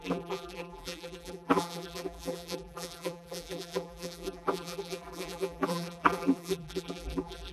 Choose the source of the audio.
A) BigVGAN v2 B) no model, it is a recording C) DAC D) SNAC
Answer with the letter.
A